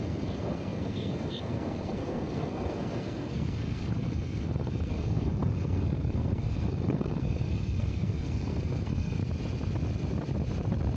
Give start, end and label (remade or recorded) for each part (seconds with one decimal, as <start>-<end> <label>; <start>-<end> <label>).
0.0-9.2 remade; 9.2-11.0 recorded